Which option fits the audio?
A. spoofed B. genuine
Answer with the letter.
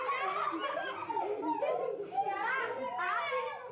B